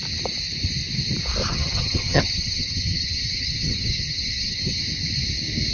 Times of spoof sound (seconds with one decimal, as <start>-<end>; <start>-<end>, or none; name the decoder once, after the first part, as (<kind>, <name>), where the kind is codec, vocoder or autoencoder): 1.4-4.8 (vocoder, HiFi-GAN)